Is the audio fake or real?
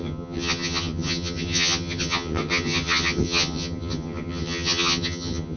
fake